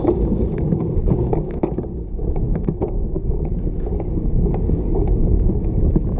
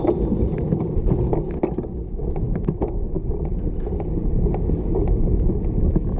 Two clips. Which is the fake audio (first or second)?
first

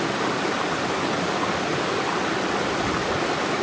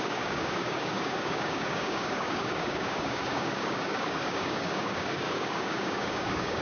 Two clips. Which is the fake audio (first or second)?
second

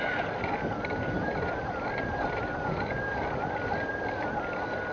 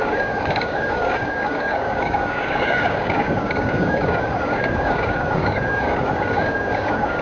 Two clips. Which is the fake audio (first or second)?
second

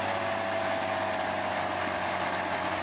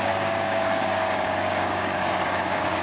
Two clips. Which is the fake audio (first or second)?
second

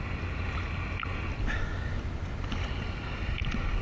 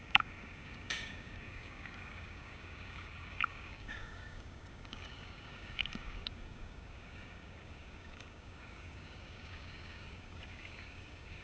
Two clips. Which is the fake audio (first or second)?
second